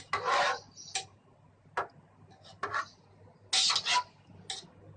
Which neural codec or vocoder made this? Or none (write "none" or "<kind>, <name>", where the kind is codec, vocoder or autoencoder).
none